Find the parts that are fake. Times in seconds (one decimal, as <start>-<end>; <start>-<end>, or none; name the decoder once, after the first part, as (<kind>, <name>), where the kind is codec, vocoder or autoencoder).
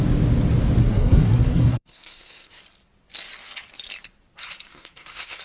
0.8-2.6 (codec, SNAC); 4.7-5.4